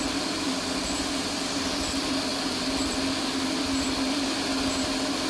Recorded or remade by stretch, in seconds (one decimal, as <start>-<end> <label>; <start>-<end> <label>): 0.0-2.3 recorded; 2.3-4.2 remade; 4.2-5.3 recorded